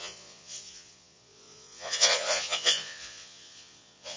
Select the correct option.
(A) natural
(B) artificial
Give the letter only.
B